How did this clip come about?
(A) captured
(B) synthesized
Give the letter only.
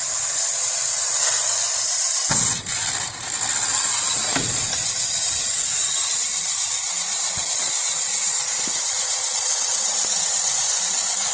A